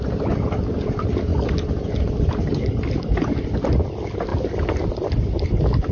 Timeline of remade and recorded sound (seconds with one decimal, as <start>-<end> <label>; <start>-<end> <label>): 0.0-5.9 recorded